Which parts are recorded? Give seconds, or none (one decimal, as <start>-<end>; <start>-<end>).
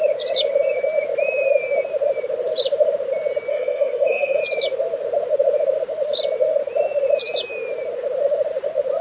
0.0-3.5; 4.4-9.0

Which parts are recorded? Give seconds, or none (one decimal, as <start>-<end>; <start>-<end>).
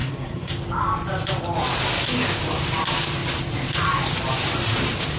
0.5-5.2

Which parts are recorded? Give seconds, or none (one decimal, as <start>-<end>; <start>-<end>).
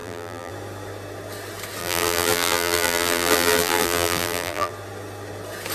0.5-1.8; 4.7-5.7